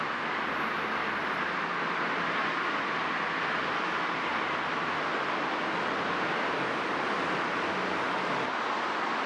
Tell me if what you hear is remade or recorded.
recorded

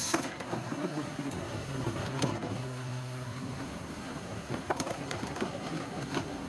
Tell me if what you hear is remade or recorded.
remade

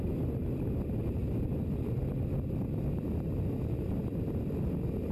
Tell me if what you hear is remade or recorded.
recorded